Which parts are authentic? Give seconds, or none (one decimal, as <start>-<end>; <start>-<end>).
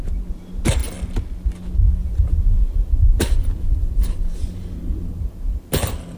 0.0-2.0; 5.7-6.2